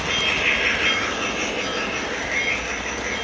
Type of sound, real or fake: real